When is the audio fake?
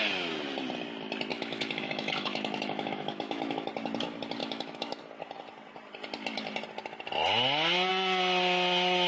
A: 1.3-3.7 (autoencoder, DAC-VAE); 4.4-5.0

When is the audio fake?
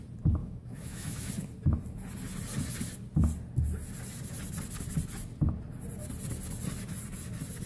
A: 0.4-1.3 (autoencoder, DAC-VAE)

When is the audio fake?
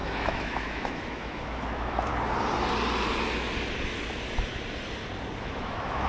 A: 0.0-2.1 (autoencoder, DAC-VAE); 5.4-6.1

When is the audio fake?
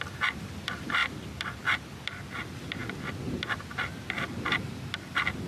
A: none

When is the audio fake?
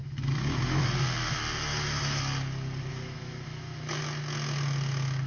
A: 0.0-0.8 (autoencoder, DAC-VAE); 1.7-2.2; 2.9-4.0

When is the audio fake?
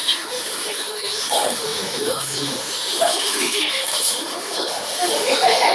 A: 0.0-5.7 (autoencoder, DAC-VAE)